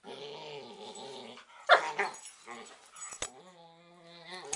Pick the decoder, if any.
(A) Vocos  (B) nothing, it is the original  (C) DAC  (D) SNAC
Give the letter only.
B